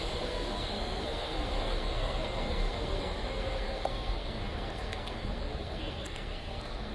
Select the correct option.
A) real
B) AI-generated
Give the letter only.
B